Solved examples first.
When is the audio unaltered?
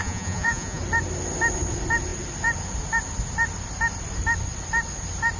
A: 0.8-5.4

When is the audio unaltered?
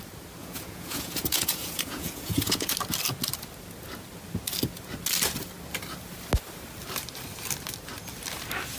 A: 0.0-0.4; 2.7-8.8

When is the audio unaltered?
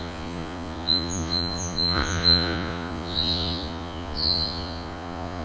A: none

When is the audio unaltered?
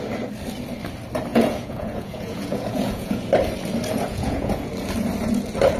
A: 0.0-1.3; 3.3-4.1; 4.7-5.8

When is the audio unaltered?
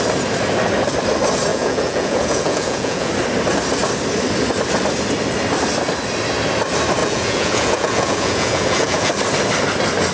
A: 0.0-1.5; 3.1-7.0; 9.1-10.1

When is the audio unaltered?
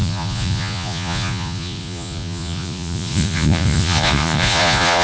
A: none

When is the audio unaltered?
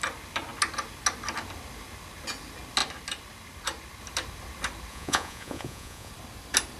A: 0.0-4.9; 6.1-6.8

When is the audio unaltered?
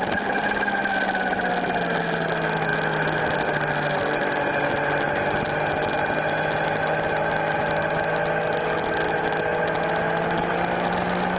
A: 0.0-11.4